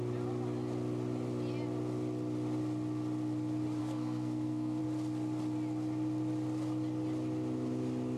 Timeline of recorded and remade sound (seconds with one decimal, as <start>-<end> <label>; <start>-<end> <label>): 0.0-3.8 recorded; 3.8-4.8 remade; 4.8-8.2 recorded